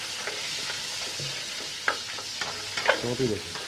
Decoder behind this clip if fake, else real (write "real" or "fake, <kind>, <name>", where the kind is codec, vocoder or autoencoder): real